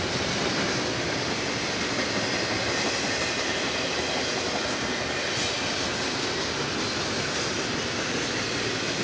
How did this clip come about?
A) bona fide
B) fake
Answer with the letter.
A